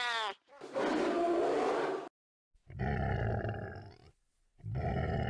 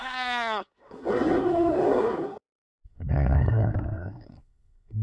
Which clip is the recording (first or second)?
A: first